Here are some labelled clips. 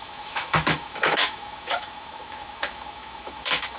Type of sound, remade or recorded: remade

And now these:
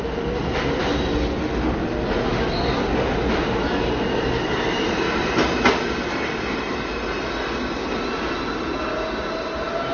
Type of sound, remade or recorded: recorded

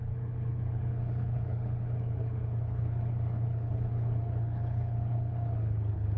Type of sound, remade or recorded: remade